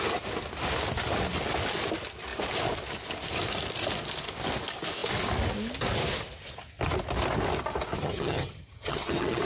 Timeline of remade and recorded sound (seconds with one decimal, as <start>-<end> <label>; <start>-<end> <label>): 0.0-8.0 recorded; 8.0-9.4 remade

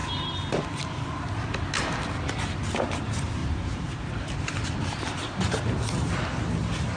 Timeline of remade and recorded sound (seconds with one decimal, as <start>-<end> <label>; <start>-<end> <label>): 0.0-3.4 recorded; 3.4-4.5 remade; 4.5-7.0 recorded

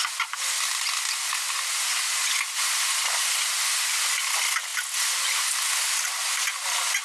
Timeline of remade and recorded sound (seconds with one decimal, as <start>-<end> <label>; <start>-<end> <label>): 0.0-7.0 recorded

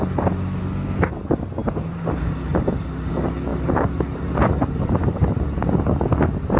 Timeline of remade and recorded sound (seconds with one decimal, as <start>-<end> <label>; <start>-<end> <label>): 0.0-0.6 recorded; 0.6-1.1 remade; 1.1-6.6 recorded